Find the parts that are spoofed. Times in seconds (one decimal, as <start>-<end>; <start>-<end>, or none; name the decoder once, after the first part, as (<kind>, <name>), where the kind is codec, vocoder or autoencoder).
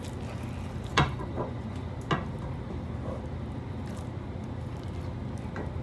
0.9-1.9 (vocoder, Vocos)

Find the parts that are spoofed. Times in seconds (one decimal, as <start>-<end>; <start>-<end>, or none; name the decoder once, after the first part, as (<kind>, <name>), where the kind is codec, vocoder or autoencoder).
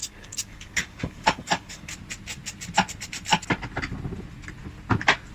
0.0-1.9 (codec, DAC)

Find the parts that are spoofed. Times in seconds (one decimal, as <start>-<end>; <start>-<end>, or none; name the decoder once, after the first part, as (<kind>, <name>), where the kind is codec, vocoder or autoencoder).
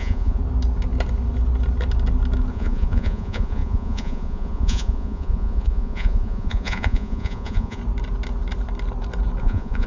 0.0-0.4 (vocoder, Vocos); 2.5-7.8; 9.4-9.9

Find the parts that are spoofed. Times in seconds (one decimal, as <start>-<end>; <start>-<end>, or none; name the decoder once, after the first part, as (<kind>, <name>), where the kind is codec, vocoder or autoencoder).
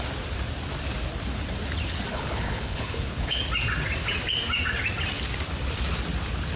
2.1-3.4 (codec, HILCodec)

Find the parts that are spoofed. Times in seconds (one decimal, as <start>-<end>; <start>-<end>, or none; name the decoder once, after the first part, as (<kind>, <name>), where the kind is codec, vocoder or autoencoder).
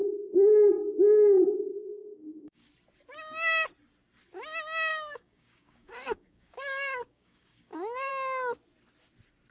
0.0-2.7 (codec, DAC); 4.9-8.1